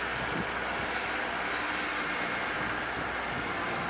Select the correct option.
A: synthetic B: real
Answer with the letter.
B